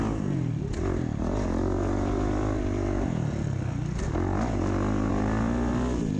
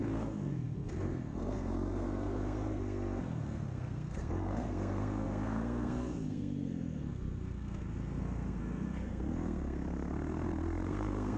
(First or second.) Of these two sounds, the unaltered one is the first